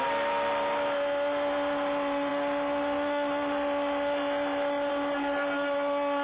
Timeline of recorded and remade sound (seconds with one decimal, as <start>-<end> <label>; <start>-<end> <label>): 0.0-6.2 recorded